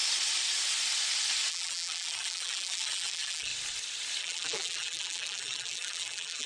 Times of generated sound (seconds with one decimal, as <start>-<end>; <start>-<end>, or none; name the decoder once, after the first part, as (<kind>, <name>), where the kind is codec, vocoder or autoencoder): 1.5-3.5 (vocoder, BigVGAN v2); 4.2-6.5